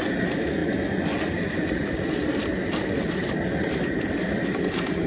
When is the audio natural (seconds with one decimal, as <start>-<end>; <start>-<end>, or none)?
0.0-5.1